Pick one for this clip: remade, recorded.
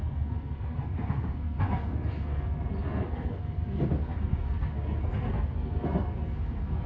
remade